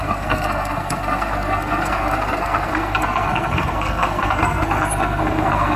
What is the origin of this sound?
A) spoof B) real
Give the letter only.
A